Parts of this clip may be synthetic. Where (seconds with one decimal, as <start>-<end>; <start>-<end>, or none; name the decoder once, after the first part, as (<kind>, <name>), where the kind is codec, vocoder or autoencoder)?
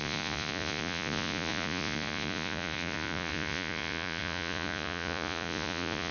0.0-6.1 (vocoder, Vocos)